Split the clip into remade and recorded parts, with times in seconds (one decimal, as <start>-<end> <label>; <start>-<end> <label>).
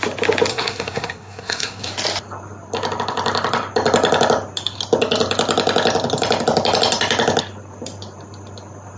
0.0-0.5 recorded; 0.5-1.9 remade; 1.9-9.0 recorded